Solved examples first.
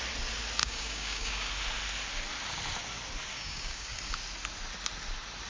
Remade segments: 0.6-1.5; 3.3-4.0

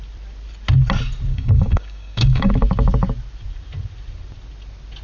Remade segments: 1.3-2.5

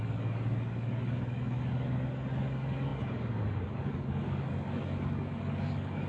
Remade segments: 0.0-6.1

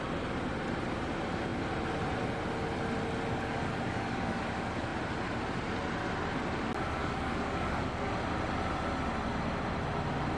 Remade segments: 3.3-4.4; 7.0-8.1

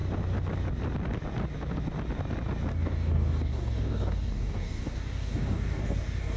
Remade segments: 2.7-6.4

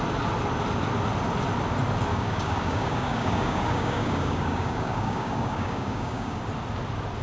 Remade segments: 2.1-6.4